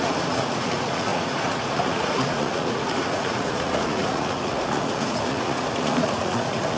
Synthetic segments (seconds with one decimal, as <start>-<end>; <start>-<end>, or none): 0.0-6.8